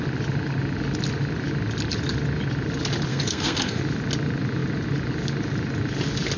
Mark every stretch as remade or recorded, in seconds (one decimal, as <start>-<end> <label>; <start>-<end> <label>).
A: 0.0-3.1 recorded; 3.1-3.8 remade; 3.8-6.4 recorded